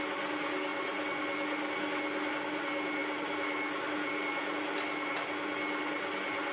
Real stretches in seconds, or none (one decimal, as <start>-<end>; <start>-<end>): 0.0-6.5